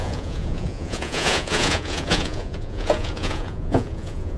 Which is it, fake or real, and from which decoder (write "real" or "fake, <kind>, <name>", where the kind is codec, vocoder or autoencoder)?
fake, vocoder, Vocos